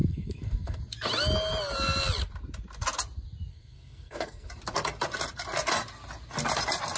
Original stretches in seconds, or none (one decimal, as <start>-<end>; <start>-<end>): 0.8-3.5; 4.5-7.0